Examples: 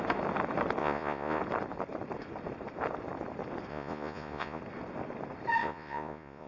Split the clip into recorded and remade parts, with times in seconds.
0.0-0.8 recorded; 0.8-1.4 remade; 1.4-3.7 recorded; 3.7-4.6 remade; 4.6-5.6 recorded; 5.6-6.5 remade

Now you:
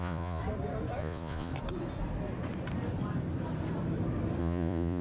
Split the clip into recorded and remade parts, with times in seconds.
0.0-0.4 remade; 0.4-1.0 recorded; 1.0-1.5 remade; 1.5-4.4 recorded; 4.4-5.0 remade

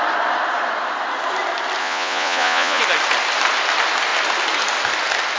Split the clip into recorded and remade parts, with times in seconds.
0.0-1.8 recorded; 1.8-2.8 remade; 2.8-5.4 recorded

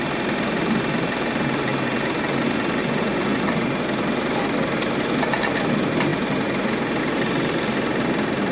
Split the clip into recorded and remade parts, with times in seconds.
0.0-2.8 recorded; 2.8-3.4 remade; 3.4-8.5 recorded

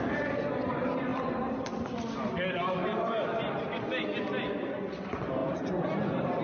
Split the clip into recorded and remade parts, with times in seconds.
0.0-6.4 recorded

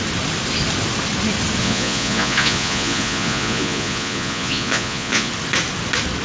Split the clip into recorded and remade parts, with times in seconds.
0.0-1.6 recorded; 1.6-5.3 remade; 5.3-6.2 recorded

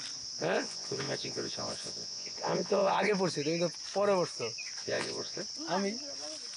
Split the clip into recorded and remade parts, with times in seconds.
0.0-0.4 recorded; 0.4-3.1 remade; 3.1-4.8 recorded; 4.8-5.4 remade; 5.4-6.6 recorded

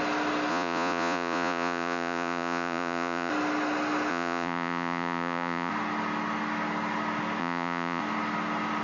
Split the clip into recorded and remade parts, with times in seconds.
0.0-0.5 recorded; 0.5-3.3 remade; 3.3-4.1 recorded; 4.1-5.7 remade; 5.7-7.4 recorded; 7.4-8.0 remade; 8.0-8.8 recorded